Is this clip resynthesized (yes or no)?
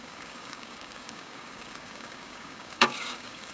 yes